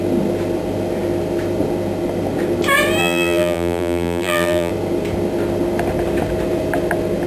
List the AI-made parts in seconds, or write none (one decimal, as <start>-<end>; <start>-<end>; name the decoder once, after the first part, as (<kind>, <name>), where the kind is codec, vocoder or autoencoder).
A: 3.0-4.7 (vocoder, BigVGAN v2)